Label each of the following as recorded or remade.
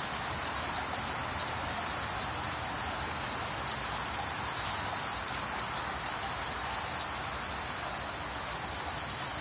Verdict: recorded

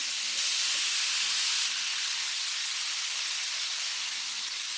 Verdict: recorded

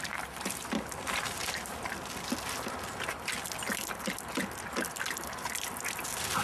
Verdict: recorded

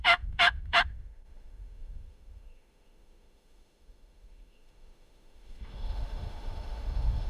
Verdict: remade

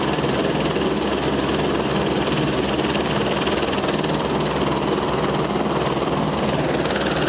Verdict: recorded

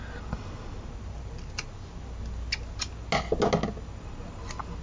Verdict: recorded